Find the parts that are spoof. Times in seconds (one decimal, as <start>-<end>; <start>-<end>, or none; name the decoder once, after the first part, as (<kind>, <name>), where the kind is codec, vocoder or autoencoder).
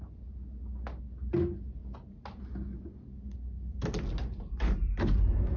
none